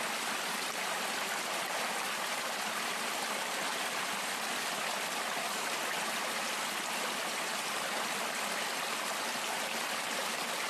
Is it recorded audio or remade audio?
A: remade